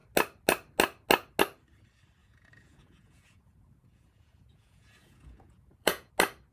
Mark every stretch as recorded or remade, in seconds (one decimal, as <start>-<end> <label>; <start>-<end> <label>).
0.0-2.2 recorded; 2.2-6.1 remade; 6.1-6.5 recorded